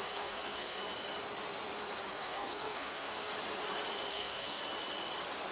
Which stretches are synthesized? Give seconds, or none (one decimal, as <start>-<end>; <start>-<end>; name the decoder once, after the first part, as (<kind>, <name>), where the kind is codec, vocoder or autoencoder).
0.0-0.8 (codec, SNAC); 2.1-3.3; 4.1-4.6